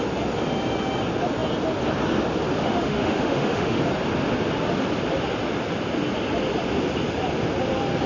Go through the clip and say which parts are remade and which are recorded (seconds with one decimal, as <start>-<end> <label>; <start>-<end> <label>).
0.0-2.6 recorded; 2.6-3.8 remade; 3.8-8.1 recorded